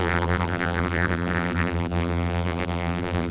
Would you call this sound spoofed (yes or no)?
yes